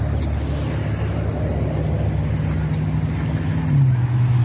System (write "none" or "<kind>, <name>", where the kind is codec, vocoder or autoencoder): none